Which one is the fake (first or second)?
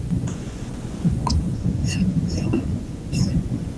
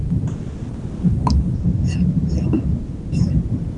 first